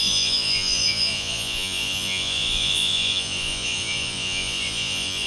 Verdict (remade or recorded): remade